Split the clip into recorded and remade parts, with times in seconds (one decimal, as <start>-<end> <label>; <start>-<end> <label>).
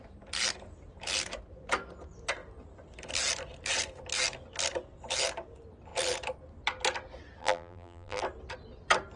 0.0-7.4 recorded; 7.4-8.2 remade; 8.2-9.2 recorded